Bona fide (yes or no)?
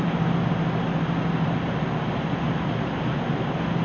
yes